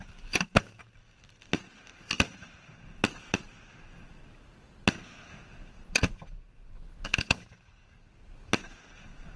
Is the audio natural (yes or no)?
yes